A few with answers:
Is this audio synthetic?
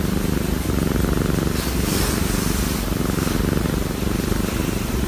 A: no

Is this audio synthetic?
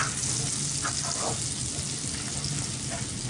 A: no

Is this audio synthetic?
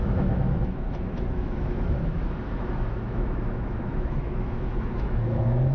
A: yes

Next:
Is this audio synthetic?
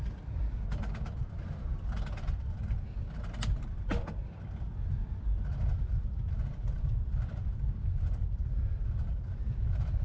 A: no